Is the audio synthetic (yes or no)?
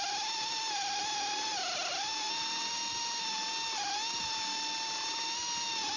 no